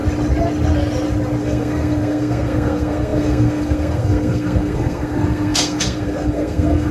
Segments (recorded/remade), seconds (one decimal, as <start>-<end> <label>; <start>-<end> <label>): 0.0-1.4 recorded; 1.4-6.9 remade